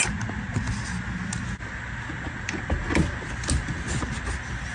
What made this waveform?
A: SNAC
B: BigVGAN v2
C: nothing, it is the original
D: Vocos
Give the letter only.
C